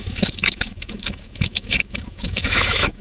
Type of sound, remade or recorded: remade